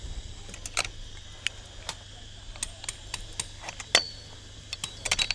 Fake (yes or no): no